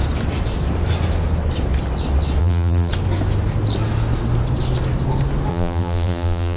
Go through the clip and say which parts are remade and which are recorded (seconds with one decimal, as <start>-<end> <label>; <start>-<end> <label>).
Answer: 0.0-2.4 recorded; 2.4-2.9 remade; 2.9-5.5 recorded; 5.5-6.6 remade